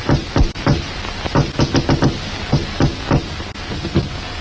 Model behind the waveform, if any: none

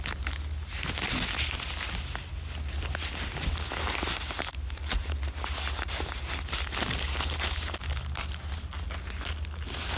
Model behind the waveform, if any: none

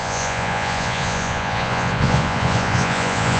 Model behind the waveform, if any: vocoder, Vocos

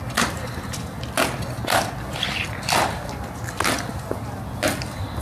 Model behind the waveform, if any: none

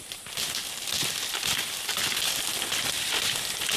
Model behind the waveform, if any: none